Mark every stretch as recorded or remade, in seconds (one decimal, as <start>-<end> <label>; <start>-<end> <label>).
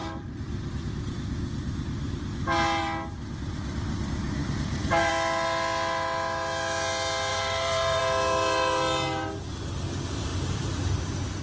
0.0-0.9 remade; 0.9-4.4 recorded; 4.4-5.1 remade; 5.1-7.3 recorded; 7.3-8.0 remade; 8.0-10.3 recorded; 10.3-11.4 remade